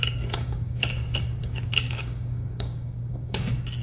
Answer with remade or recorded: remade